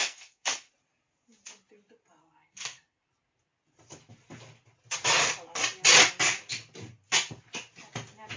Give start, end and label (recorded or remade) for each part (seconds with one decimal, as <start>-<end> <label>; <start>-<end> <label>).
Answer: 0.0-0.7 remade; 0.7-2.2 recorded; 2.2-3.1 remade; 3.1-8.4 recorded